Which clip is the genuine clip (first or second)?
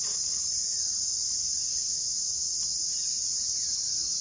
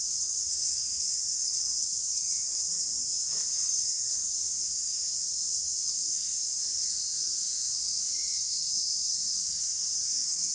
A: first